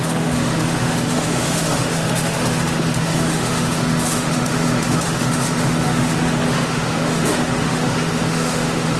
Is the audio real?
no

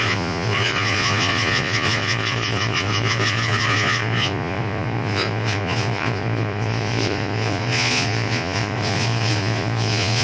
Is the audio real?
no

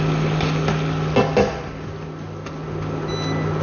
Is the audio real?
yes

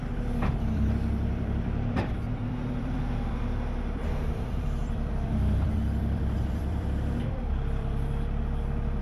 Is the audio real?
no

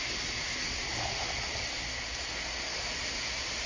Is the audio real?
yes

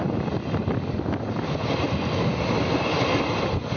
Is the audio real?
yes